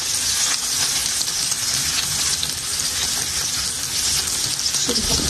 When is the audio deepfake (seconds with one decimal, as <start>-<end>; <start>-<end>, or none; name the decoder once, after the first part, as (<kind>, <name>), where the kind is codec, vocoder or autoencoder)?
none